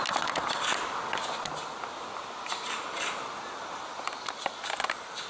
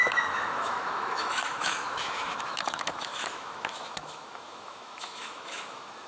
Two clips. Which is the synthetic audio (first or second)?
second